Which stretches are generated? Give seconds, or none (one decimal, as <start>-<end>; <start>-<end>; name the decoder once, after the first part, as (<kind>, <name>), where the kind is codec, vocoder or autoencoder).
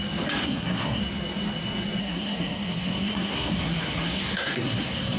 0.4-1.0 (codec, SNAC); 2.0-5.2